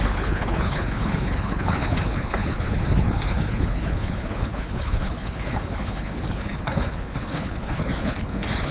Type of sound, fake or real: fake